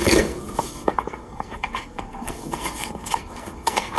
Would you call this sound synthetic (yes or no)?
yes